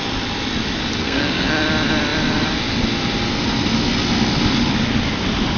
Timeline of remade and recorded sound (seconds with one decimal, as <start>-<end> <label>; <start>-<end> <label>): 0.0-1.0 recorded; 1.0-1.5 remade; 1.5-5.6 recorded